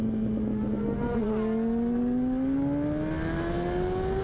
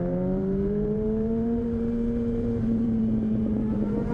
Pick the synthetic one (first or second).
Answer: second